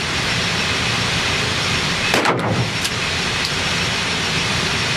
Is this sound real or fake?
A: real